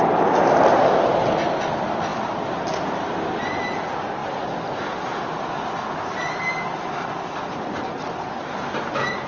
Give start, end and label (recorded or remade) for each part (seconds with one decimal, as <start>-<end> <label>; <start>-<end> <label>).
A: 0.0-9.3 recorded